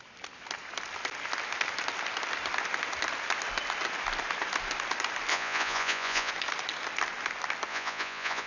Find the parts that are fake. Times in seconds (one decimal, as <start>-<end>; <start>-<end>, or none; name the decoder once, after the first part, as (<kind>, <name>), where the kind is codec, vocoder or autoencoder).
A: 5.3-6.3 (vocoder, Vocos); 7.7-8.5